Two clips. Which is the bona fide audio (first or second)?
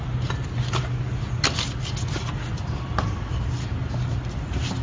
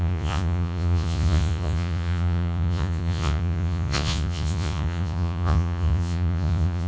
first